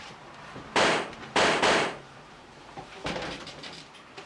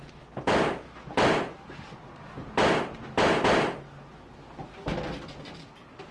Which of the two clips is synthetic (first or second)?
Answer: first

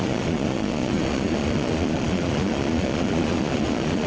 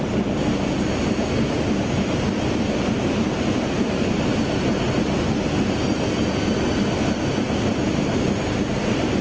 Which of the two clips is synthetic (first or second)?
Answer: first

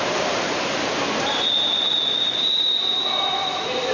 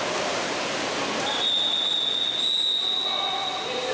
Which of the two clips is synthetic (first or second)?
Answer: first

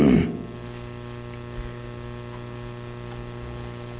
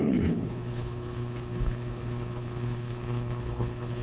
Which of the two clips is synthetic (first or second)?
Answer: second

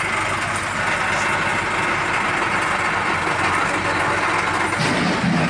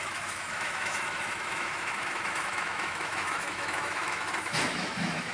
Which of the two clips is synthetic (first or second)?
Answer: second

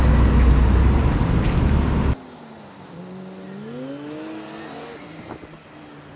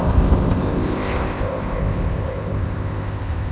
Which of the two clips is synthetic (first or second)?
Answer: second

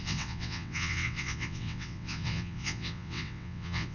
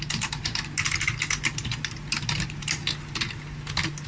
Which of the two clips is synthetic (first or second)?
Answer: first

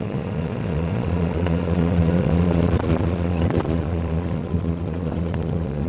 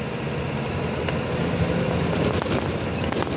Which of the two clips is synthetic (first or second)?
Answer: first